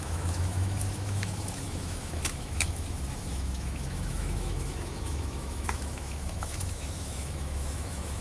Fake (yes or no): yes